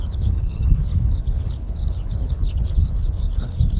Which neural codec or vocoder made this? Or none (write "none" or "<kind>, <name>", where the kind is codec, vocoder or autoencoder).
codec, HILCodec